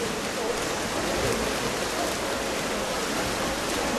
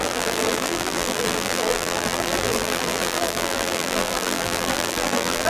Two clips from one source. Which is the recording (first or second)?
first